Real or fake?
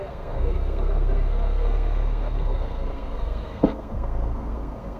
fake